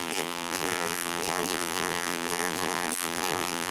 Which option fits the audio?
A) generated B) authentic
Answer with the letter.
A